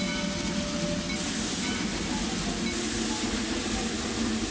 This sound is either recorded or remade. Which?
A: recorded